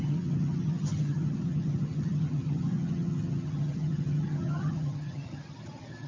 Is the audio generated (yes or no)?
yes